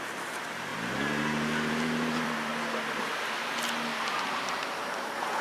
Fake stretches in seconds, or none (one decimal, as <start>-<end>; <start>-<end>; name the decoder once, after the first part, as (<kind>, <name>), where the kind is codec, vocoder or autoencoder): 0.0-0.7 (vocoder, BigVGAN v2); 1.7-2.5; 4.1-5.4